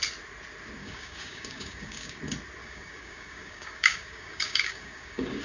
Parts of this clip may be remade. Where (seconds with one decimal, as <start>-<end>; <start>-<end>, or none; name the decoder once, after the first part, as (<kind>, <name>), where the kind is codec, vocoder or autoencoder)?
0.8-2.2 (codec, DAC); 2.6-5.4